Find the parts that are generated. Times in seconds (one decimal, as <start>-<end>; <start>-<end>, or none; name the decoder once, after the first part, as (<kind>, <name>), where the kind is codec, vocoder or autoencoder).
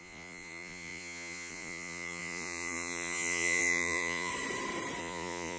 0.0-4.3 (vocoder, Vocos); 5.0-5.6